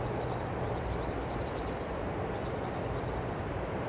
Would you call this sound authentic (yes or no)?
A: yes